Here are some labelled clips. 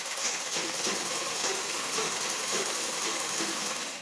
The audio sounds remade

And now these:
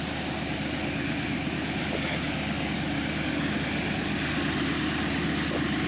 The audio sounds recorded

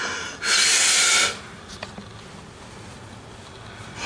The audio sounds recorded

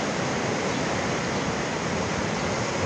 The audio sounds recorded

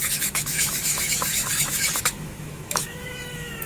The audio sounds remade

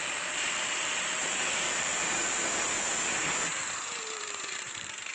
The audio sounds remade